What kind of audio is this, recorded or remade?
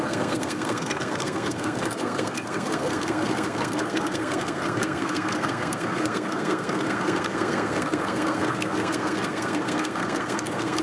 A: remade